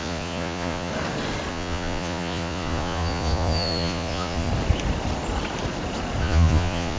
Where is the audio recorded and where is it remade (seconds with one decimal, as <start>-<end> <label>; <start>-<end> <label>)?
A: 0.0-0.9 remade; 0.9-1.5 recorded; 1.5-4.5 remade; 4.5-6.2 recorded; 6.2-7.0 remade